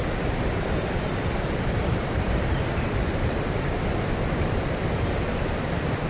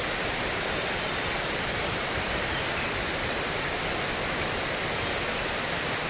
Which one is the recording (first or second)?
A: second